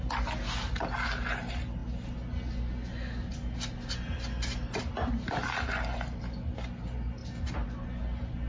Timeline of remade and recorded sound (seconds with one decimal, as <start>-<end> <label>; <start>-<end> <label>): 0.0-8.5 recorded